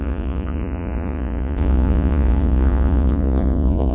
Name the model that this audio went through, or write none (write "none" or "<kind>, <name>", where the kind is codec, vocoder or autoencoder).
vocoder, Vocos